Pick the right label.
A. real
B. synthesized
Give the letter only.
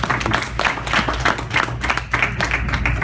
A